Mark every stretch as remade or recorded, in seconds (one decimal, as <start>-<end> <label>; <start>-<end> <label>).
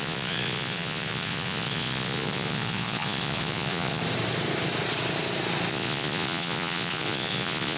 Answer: 0.0-4.0 remade; 4.0-5.7 recorded; 5.7-7.8 remade